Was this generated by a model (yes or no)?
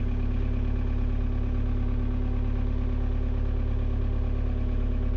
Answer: no